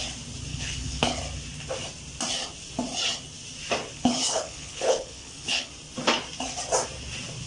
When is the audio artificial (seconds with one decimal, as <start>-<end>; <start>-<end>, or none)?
0.5-1.2; 3.9-5.7